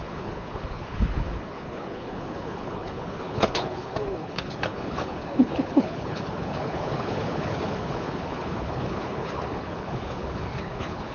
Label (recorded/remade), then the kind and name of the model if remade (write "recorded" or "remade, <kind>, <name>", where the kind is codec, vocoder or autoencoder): remade, codec, HILCodec